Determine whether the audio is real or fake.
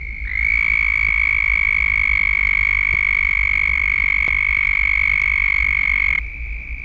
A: real